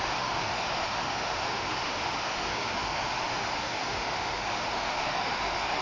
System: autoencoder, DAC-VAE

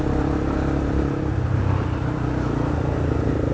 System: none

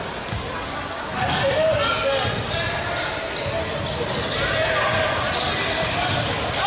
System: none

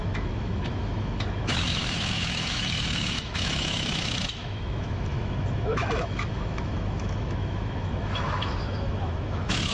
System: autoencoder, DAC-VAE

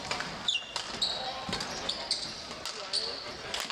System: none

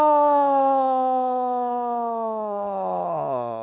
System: autoencoder, DAC-VAE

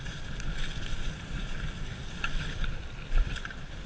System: none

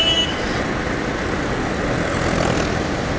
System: none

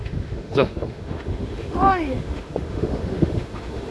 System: autoencoder, DAC-VAE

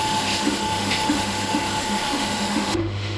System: autoencoder, DAC-VAE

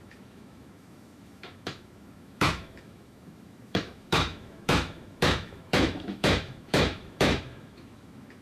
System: autoencoder, DAC-VAE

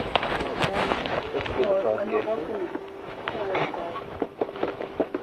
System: autoencoder, DAC-VAE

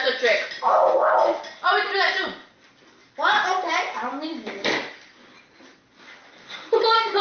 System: none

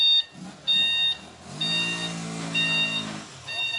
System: none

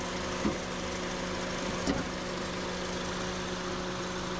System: none